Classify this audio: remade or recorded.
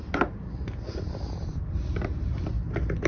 recorded